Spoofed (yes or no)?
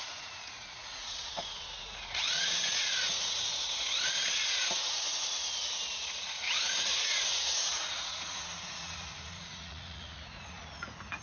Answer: yes